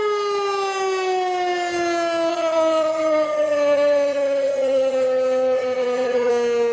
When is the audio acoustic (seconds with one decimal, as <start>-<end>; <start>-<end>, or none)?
0.0-2.3; 6.3-6.7